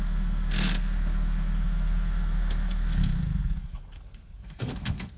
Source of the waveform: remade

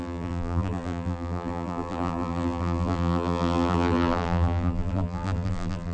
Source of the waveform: remade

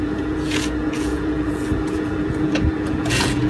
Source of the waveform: remade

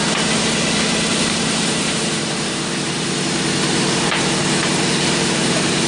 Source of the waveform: remade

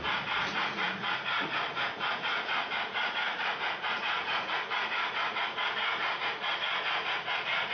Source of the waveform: remade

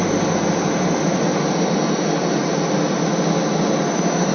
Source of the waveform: recorded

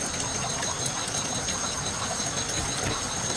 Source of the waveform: recorded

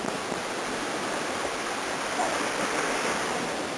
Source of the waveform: recorded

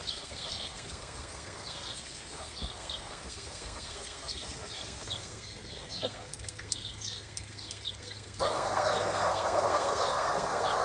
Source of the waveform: remade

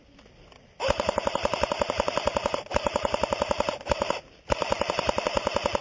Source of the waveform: recorded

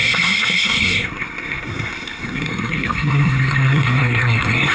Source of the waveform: remade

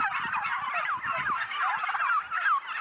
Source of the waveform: recorded